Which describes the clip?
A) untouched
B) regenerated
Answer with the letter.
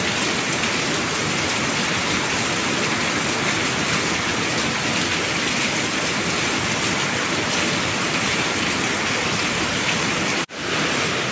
A